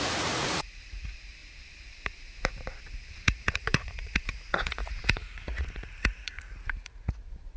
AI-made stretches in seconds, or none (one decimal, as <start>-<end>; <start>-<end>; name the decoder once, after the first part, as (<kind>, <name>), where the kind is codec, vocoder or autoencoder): 0.0-1.4 (vocoder, Vocos); 3.1-7.6